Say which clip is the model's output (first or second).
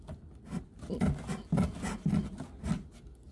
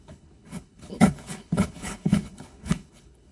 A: second